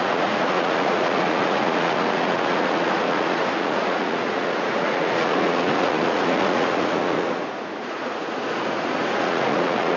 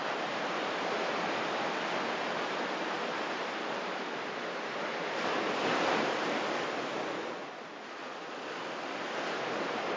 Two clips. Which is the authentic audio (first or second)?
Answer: second